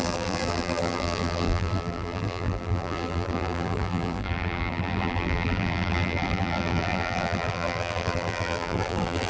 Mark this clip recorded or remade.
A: remade